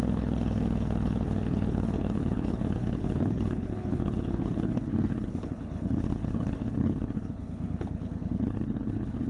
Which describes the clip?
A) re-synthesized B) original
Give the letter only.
A